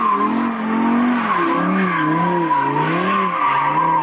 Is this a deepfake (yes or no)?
no